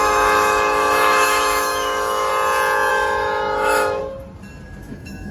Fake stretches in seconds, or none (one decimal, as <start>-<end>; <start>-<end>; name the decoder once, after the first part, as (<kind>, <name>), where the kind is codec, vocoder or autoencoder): 0.0-2.3 (autoencoder, DAC-VAE); 2.9-4.0; 4.8-5.3